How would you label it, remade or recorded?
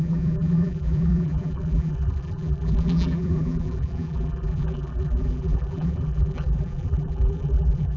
remade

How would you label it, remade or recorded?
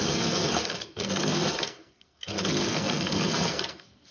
remade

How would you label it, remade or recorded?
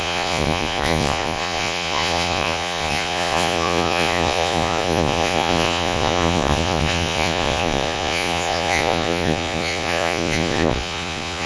remade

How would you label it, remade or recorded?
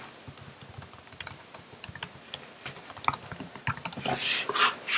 recorded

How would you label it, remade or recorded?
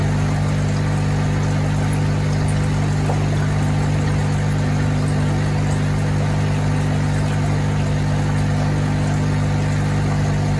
recorded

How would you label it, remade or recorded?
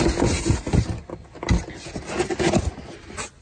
recorded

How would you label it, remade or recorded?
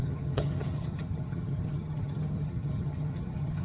remade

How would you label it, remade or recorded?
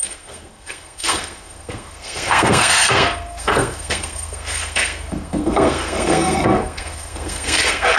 remade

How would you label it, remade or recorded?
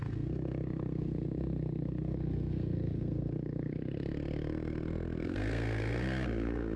remade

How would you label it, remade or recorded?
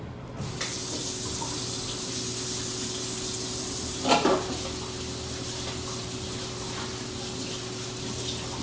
recorded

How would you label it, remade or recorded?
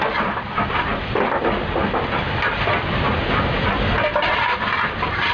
remade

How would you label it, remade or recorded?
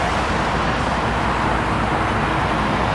recorded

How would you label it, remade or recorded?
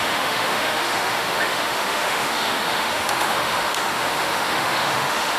remade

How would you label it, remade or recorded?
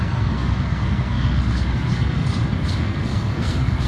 remade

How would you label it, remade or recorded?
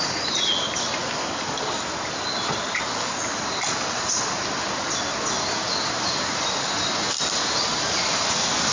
recorded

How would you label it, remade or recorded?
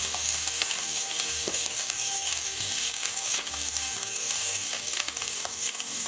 remade